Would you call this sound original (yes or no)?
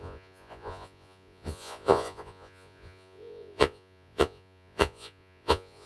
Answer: no